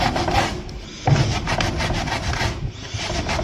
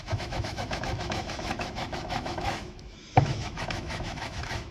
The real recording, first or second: first